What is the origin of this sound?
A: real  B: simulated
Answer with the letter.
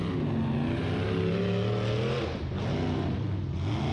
A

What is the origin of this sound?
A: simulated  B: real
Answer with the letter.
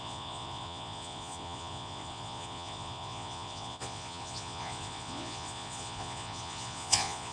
A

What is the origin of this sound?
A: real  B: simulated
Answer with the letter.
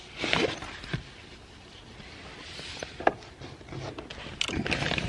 A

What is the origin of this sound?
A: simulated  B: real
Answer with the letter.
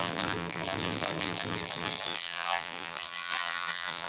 A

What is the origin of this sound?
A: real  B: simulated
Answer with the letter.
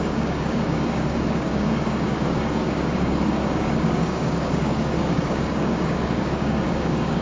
B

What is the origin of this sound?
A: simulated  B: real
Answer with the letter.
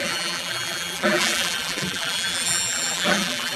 A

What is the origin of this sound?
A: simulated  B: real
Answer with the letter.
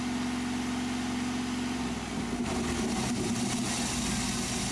B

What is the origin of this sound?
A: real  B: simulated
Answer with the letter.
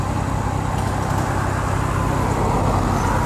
A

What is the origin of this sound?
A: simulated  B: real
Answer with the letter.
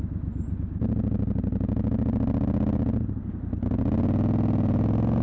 B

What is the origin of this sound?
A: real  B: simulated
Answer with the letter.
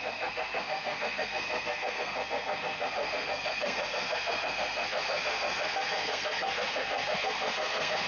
B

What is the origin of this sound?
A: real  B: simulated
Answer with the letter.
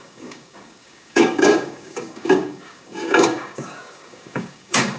B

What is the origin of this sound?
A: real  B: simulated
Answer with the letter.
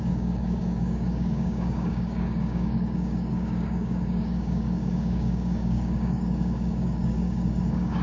B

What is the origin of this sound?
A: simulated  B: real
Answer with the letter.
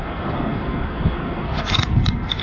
A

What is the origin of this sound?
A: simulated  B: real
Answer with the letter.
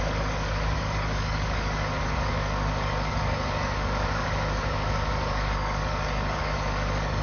A